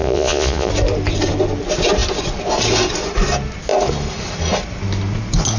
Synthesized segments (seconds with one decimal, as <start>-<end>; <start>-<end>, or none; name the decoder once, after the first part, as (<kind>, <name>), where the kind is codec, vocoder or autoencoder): 0.0-0.7 (vocoder, Vocos)